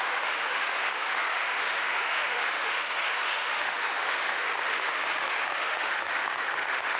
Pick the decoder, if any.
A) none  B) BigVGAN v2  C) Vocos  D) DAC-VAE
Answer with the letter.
D